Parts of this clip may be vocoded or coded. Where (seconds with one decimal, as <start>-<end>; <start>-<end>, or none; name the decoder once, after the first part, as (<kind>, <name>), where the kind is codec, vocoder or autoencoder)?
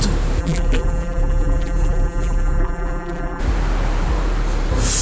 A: 0.4-3.4 (vocoder, BigVGAN v2)